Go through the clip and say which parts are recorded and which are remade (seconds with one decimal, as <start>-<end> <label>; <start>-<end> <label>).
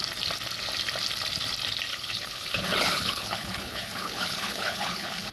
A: 0.0-1.9 recorded; 1.9-5.3 remade